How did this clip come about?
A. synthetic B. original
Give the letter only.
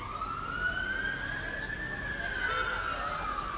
B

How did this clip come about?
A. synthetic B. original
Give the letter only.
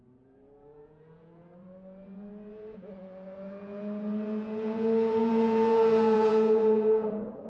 A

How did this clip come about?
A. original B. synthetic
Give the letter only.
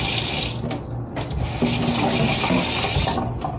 A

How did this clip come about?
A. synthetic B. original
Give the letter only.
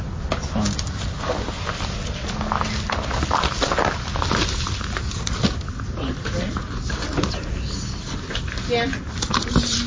B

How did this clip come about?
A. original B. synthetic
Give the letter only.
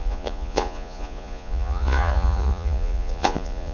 B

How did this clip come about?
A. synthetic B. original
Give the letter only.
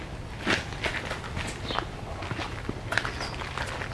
B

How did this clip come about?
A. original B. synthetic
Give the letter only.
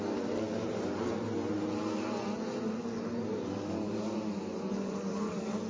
A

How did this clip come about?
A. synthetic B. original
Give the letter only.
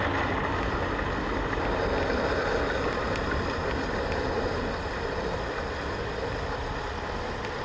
B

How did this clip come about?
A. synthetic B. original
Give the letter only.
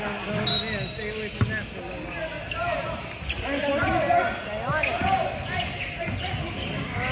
B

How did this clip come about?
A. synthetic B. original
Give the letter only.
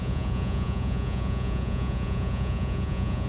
A